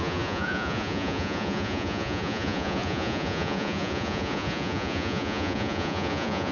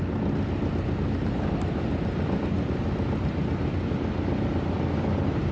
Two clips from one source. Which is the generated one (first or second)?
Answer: first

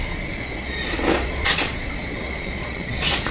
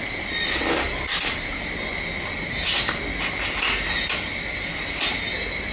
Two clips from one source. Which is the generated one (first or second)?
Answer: first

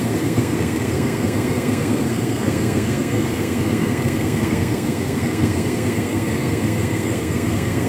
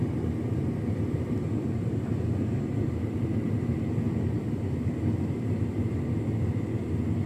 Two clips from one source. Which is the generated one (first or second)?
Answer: first